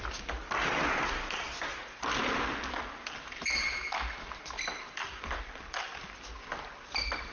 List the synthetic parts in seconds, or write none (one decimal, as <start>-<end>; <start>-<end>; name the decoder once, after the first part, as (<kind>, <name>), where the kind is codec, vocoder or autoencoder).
none